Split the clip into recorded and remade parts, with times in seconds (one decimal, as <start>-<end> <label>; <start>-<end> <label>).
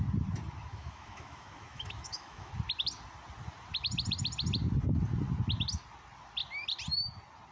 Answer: 0.0-0.7 recorded; 0.7-2.5 remade; 2.5-7.5 recorded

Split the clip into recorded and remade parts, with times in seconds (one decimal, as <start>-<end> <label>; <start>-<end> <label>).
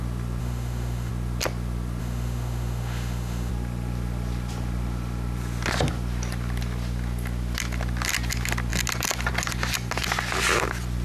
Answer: 0.0-0.4 recorded; 0.4-1.1 remade; 1.1-2.0 recorded; 2.0-3.5 remade; 3.5-11.0 recorded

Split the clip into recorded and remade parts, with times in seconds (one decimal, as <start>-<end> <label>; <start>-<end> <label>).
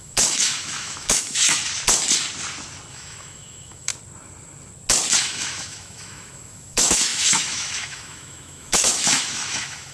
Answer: 0.0-1.6 remade; 1.6-2.9 recorded; 2.9-3.9 remade; 3.9-5.2 recorded; 5.2-9.9 remade